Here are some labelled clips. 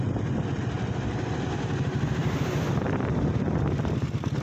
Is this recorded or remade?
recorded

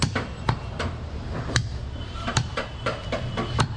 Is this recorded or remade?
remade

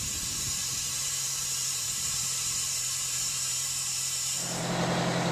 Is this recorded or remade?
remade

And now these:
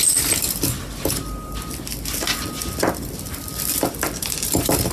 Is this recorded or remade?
remade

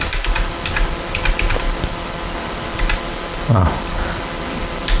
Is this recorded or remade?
remade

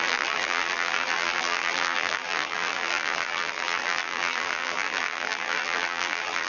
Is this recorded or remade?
remade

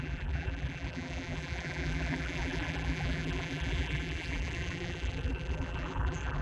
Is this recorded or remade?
remade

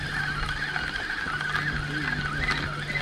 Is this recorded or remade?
recorded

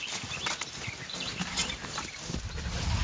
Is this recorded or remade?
remade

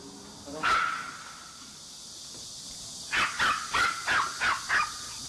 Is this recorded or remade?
recorded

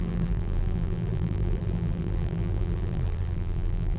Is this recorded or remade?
remade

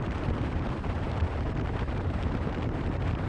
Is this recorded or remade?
remade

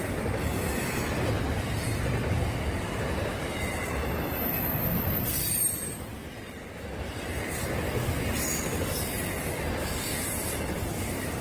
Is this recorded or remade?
recorded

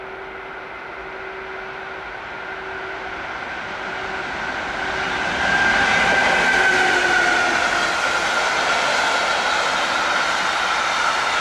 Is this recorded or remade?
recorded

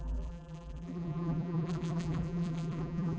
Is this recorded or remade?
remade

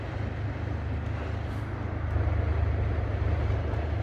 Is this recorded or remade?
recorded